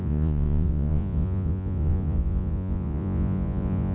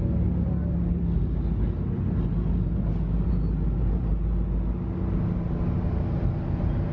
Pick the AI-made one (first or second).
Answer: first